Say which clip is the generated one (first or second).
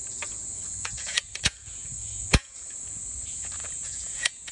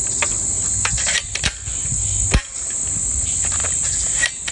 first